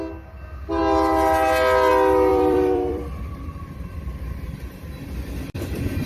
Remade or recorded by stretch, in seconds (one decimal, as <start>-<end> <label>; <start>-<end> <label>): 0.0-2.3 recorded; 2.3-4.6 remade; 4.6-6.1 recorded